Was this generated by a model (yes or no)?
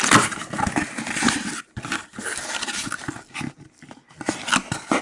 no